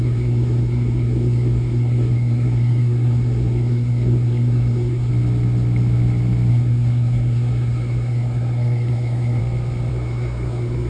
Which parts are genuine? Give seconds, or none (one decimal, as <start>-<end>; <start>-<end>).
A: 5.1-6.5; 9.4-9.9